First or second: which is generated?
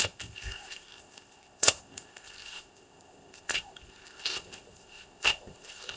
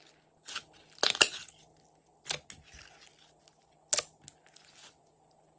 first